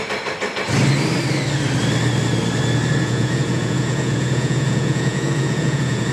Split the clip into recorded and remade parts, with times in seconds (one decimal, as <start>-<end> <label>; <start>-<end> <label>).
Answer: 0.0-3.0 recorded; 3.0-6.1 remade